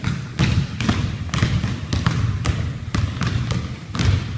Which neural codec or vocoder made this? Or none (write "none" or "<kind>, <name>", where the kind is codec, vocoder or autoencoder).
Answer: none